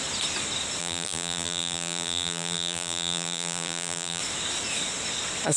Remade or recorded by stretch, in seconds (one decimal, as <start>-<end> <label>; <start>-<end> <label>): 0.0-0.8 recorded; 0.8-4.2 remade; 4.2-5.6 recorded